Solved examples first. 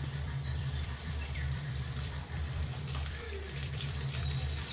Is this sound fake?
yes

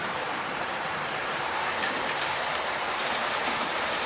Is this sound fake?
yes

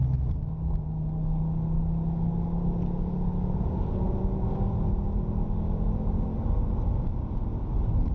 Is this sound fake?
no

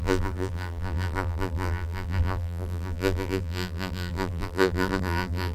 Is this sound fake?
yes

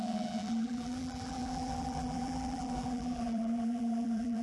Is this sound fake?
yes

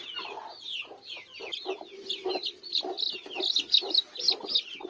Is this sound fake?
no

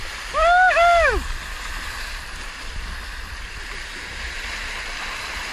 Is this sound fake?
no